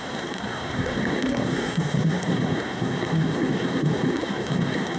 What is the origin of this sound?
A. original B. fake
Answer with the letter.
B